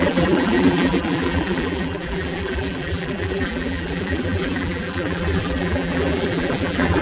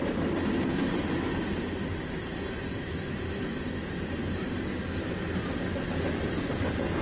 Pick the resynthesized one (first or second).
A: first